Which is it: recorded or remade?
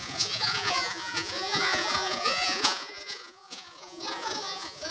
remade